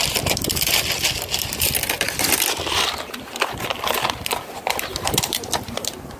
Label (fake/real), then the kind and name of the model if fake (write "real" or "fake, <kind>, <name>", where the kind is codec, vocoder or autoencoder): fake, vocoder, BigVGAN v2